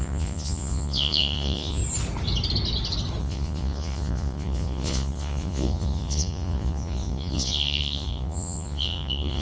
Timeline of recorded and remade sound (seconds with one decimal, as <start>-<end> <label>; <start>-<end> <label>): 0.0-1.8 remade; 1.8-3.2 recorded; 3.2-9.4 remade